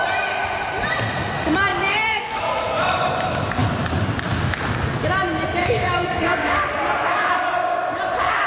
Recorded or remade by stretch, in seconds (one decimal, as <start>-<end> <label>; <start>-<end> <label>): 0.0-1.7 recorded; 1.7-2.4 remade; 2.4-5.6 recorded; 5.6-6.6 remade; 6.6-7.1 recorded; 7.1-7.9 remade; 7.9-8.5 recorded